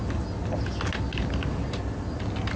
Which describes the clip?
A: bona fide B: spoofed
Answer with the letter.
A